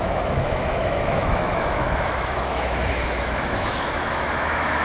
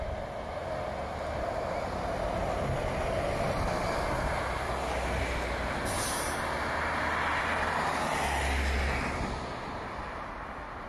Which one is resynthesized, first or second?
first